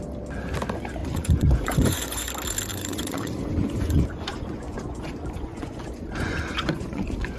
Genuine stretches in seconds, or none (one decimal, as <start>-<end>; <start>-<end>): 0.0-1.0; 2.3-2.7